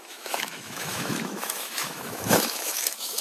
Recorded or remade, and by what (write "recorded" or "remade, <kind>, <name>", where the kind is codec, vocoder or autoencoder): remade, autoencoder, DAC-VAE